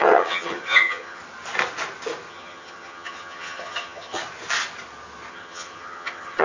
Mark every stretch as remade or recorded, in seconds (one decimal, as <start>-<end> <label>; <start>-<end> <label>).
0.0-1.2 remade; 1.2-2.3 recorded; 2.3-4.2 remade; 4.2-5.3 recorded; 5.3-6.4 remade